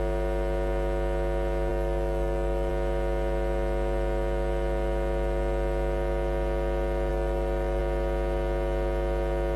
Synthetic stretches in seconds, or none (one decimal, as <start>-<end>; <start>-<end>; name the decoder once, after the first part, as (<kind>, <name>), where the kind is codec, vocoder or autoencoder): 1.7-2.7 (autoencoder, DAC-VAE); 7.1-7.8